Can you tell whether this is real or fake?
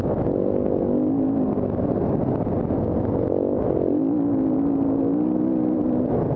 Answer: real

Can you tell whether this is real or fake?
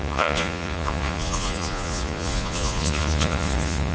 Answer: fake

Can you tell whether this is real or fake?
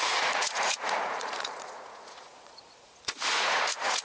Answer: fake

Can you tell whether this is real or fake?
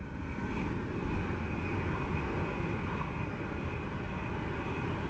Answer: real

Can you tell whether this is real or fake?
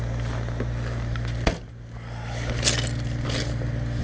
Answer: real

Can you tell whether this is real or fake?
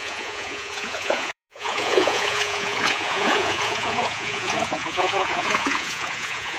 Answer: fake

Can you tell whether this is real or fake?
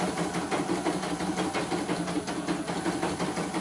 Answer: real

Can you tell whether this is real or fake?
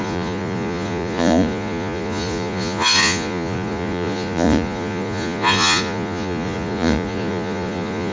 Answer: fake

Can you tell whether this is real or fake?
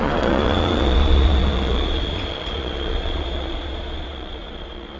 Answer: fake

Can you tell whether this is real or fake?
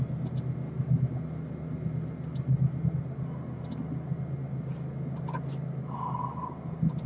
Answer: real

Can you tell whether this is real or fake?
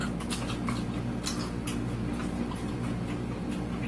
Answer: real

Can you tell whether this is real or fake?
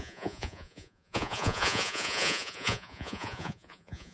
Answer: fake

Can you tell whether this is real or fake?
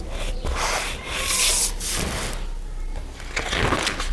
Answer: real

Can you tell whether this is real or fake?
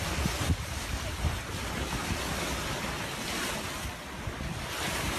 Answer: real